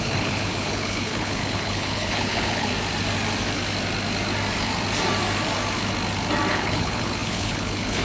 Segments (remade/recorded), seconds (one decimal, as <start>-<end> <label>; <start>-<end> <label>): 0.0-2.7 remade; 2.7-6.5 recorded; 6.5-8.0 remade